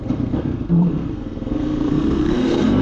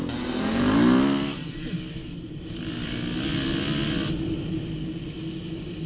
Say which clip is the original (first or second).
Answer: second